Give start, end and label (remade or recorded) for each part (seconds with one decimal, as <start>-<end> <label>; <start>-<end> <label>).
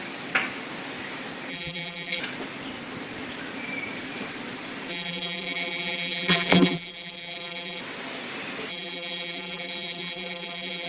0.0-1.5 recorded; 1.5-2.2 remade; 2.2-4.9 recorded; 4.9-7.8 remade; 7.8-8.7 recorded; 8.7-10.9 remade